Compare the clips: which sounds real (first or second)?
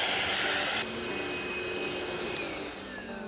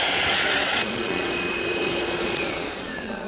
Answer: first